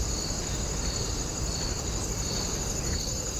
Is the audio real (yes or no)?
yes